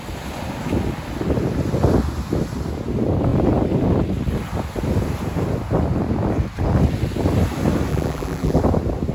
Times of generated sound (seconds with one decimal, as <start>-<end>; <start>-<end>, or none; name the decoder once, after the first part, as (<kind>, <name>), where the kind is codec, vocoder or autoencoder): 7.9-8.6 (vocoder, BigVGAN v2)